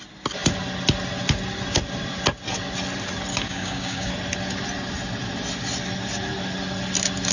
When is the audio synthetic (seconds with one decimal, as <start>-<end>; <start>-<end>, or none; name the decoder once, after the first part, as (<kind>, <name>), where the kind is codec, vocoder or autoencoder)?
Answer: 3.3-4.1 (codec, DAC)